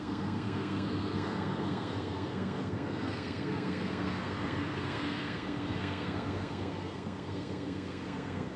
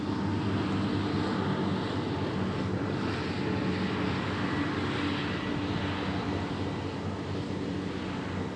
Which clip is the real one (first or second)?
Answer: second